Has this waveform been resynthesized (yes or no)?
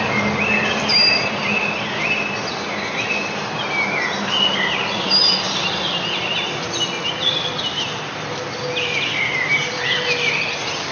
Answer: no